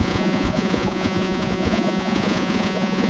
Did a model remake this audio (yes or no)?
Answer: yes